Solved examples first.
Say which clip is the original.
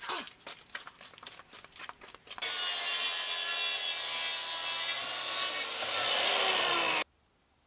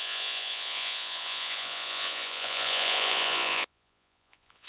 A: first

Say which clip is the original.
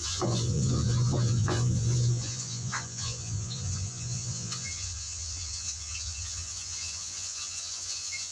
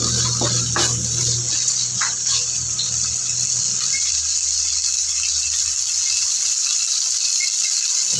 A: second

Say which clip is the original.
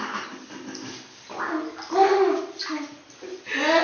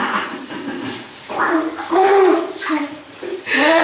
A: first